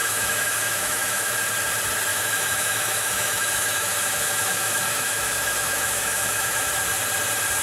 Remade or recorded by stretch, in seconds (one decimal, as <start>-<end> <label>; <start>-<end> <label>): 0.0-1.4 remade; 1.4-2.1 recorded; 2.1-6.7 remade; 6.7-7.6 recorded